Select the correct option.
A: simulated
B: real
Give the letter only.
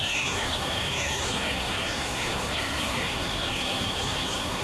A